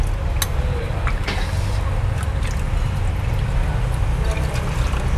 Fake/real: real